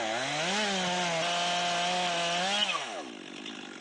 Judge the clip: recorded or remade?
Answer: recorded